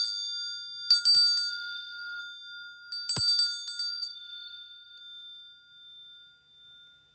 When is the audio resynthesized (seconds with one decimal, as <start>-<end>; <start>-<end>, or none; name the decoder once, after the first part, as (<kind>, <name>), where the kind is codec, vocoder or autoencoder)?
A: 1.5-2.2 (codec, SNAC); 3.9-5.0